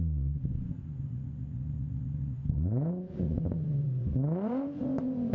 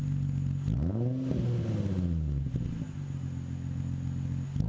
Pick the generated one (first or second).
first